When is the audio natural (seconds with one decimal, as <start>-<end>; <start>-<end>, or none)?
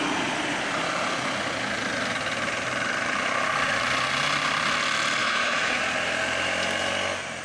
0.0-5.2; 5.8-7.4